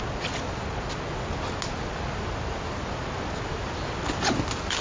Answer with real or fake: real